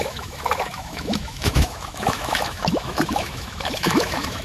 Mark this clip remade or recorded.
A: remade